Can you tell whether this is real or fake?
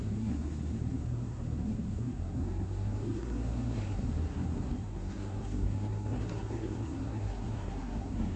fake